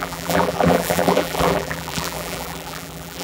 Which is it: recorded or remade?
remade